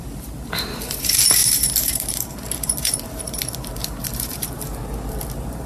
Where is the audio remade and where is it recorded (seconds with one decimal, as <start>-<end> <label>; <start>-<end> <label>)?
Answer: 0.0-5.7 remade